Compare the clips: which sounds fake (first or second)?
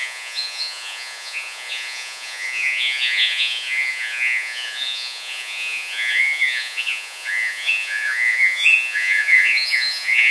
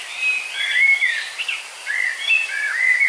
first